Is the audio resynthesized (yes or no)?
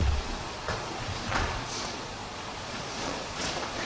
yes